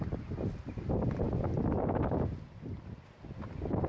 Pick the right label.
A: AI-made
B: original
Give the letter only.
B